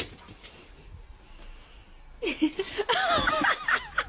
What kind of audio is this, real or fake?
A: real